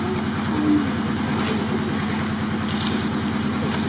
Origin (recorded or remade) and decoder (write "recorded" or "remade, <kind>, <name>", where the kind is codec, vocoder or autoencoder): recorded